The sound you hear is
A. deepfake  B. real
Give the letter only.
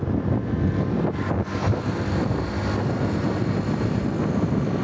B